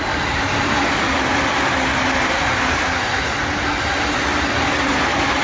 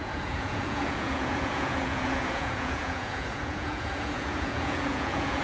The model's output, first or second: second